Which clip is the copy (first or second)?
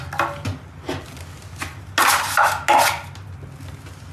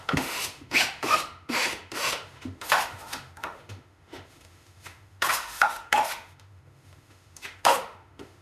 second